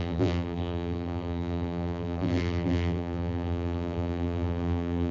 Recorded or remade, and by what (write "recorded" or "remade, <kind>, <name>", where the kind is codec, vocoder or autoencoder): remade, vocoder, BigVGAN v2